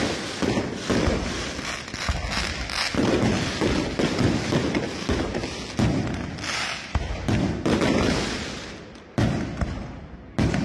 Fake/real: real